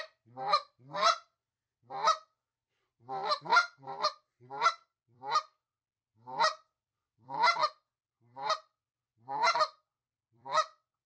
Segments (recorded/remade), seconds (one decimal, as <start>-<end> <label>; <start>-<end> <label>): 0.0-7.6 remade; 7.6-8.1 recorded; 8.1-11.1 remade